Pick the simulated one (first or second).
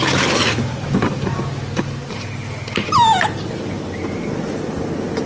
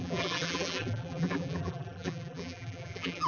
second